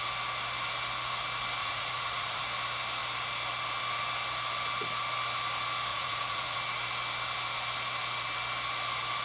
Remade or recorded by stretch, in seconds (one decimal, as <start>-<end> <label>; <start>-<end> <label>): 0.0-1.6 recorded; 1.6-2.4 remade; 2.4-5.9 recorded; 5.9-6.6 remade; 6.6-9.2 recorded